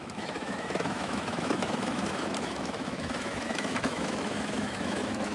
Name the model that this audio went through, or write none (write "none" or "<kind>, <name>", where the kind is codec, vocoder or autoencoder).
autoencoder, DAC-VAE